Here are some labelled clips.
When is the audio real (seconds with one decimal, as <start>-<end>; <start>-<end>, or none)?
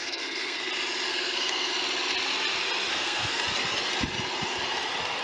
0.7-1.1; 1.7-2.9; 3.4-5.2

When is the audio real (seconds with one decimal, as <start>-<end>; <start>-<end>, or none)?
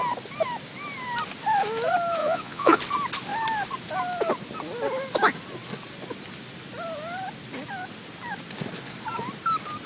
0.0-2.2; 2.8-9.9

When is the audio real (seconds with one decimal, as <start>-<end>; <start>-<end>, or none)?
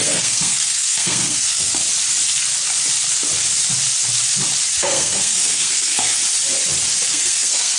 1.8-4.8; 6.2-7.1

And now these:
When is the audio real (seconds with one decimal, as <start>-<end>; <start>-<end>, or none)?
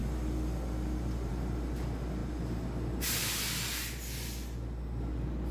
0.0-5.5